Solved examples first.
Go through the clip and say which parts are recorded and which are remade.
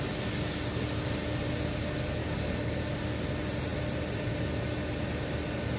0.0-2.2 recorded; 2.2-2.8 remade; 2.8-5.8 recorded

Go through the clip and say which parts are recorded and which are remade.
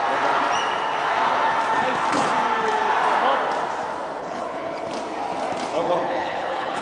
0.0-4.2 recorded; 4.2-4.9 remade; 4.9-5.7 recorded; 5.7-6.8 remade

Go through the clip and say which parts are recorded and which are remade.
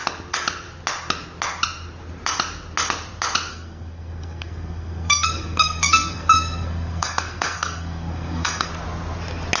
0.0-3.5 recorded; 3.5-8.7 remade; 8.7-9.6 recorded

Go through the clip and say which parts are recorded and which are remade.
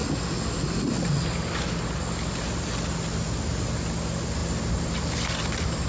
0.0-5.9 recorded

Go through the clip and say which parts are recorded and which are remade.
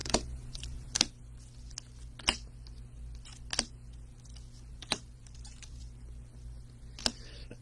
0.0-1.0 remade; 1.0-4.7 recorded; 4.7-5.8 remade; 5.8-7.6 recorded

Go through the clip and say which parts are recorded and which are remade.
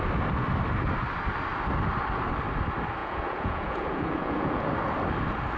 0.0-3.0 recorded; 3.0-4.7 remade; 4.7-5.6 recorded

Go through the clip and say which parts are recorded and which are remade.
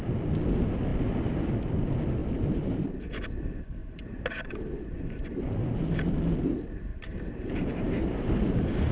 0.0-2.2 recorded; 2.2-3.0 remade; 3.0-3.8 recorded; 3.8-5.9 remade; 5.9-6.9 recorded; 6.9-8.1 remade; 8.1-8.9 recorded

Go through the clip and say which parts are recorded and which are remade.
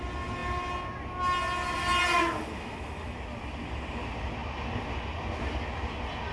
0.0-2.2 recorded; 2.2-3.2 remade; 3.2-6.3 recorded